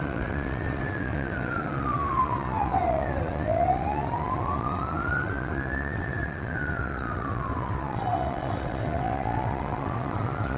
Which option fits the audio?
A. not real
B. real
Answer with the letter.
A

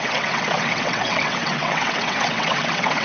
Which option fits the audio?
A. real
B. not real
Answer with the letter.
B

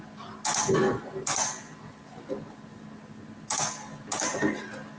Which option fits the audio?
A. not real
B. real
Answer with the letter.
B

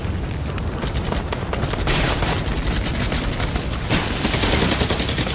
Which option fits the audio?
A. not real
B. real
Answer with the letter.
B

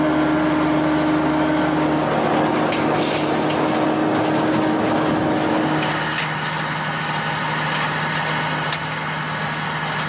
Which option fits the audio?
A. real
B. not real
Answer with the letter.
A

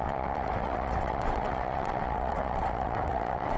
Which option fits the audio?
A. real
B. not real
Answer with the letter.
B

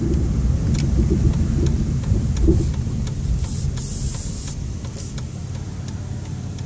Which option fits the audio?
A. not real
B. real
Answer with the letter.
B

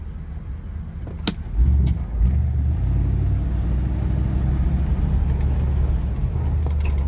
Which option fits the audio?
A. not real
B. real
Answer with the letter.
B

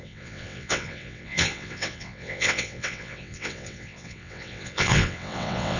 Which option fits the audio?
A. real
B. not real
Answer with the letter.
B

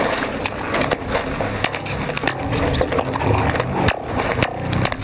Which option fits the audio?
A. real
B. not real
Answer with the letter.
A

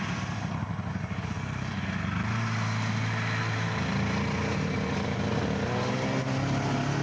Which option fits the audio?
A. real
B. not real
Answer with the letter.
A